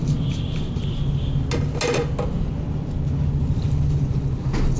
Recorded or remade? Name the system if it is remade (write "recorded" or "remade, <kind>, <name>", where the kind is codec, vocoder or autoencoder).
recorded